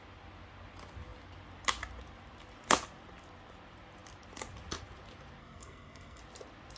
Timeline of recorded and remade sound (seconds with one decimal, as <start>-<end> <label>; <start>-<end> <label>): 0.0-5.4 recorded; 5.4-6.2 remade; 6.2-6.8 recorded